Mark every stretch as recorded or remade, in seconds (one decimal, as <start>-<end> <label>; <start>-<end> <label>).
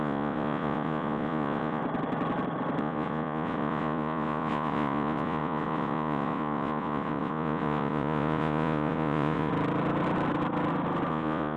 0.0-1.8 remade; 1.8-2.8 recorded; 2.8-9.5 remade; 9.5-11.1 recorded; 11.1-11.6 remade